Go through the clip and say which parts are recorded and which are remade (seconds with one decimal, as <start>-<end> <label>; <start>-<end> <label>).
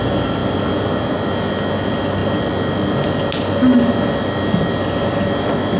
0.0-5.8 recorded